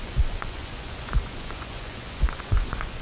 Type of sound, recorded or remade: remade